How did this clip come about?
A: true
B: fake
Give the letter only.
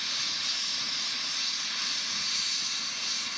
B